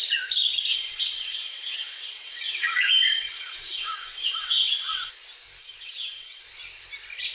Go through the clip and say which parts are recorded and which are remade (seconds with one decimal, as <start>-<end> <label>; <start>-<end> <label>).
0.0-0.7 recorded; 0.7-5.1 remade; 5.1-5.6 recorded; 5.6-6.4 remade; 6.4-7.3 recorded